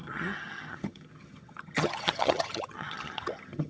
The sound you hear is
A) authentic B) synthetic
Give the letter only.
B